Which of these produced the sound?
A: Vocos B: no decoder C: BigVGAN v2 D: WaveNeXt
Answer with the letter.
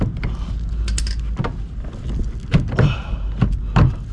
B